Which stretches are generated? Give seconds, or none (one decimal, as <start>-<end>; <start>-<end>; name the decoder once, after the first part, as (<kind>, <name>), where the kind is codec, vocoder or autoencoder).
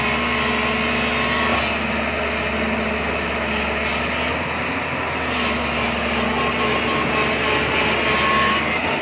none